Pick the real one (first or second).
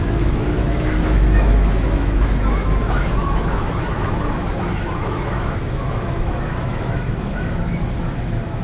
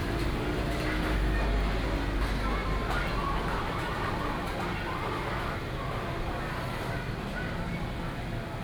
second